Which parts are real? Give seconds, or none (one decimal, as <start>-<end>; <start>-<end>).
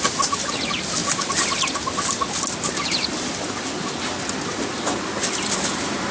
0.0-6.1